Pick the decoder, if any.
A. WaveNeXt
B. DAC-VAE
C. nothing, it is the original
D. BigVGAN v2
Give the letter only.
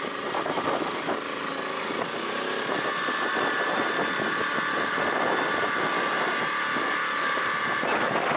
C